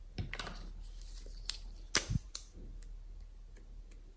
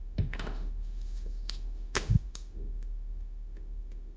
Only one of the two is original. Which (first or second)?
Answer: first